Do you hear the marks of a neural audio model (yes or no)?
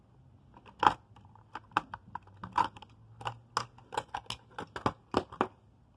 no